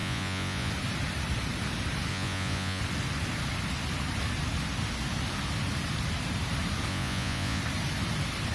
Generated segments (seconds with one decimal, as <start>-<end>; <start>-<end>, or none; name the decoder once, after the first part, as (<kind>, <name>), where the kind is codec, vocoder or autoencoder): 0.0-0.7 (vocoder, Vocos); 2.1-2.8; 6.9-7.6